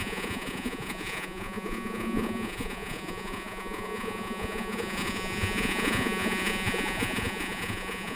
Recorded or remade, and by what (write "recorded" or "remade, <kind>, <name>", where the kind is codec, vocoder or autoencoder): remade, vocoder, Vocos